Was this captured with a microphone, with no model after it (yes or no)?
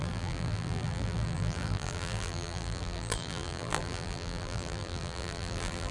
no